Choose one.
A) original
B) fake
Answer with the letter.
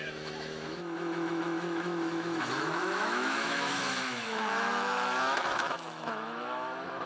B